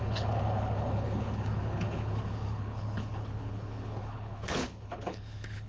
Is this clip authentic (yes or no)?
no